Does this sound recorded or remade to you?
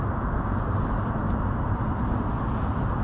recorded